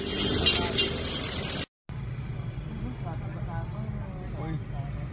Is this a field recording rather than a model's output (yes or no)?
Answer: yes